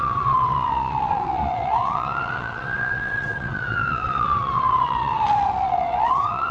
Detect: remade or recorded remade